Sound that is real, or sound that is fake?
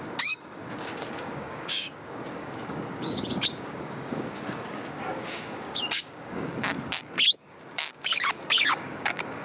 fake